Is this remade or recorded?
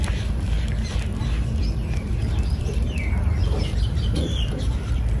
remade